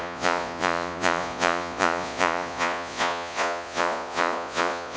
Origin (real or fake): fake